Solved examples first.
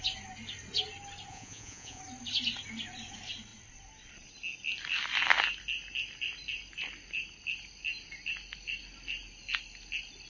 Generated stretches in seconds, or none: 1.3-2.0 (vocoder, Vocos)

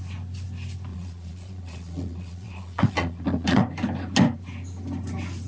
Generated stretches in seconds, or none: 0.9-3.6 (vocoder, Vocos)

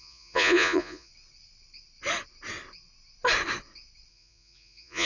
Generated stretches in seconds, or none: 0.0-1.1 (vocoder, Vocos); 4.1-5.0

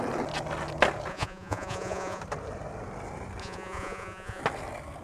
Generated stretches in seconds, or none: 1.1-2.2 (vocoder, Vocos); 3.4-4.4

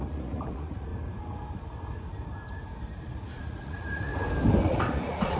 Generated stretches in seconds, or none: 0.0-0.9 (vocoder, Vocos); 3.1-4.1; 4.6-5.4

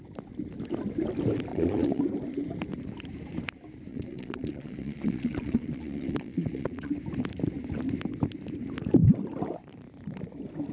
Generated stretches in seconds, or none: 1.5-2.0 (vocoder, Vocos); 3.9-6.9

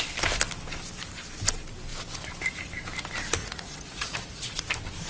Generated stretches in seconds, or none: 3.4-4.6 (vocoder, Vocos)

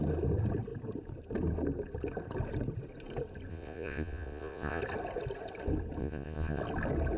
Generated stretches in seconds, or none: 3.5-4.8 (vocoder, Vocos); 6.0-6.6